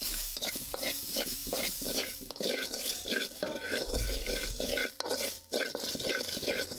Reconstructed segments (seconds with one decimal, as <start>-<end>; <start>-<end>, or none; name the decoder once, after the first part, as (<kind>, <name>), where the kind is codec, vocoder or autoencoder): 0.0-4.8 (codec, DAC); 6.1-6.8

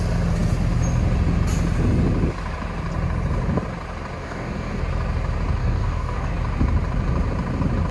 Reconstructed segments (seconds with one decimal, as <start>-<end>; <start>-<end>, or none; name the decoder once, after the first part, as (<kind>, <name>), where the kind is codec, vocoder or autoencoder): 4.2-4.8 (codec, DAC); 5.6-6.3